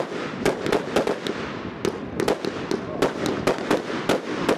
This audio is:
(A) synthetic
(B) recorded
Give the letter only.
B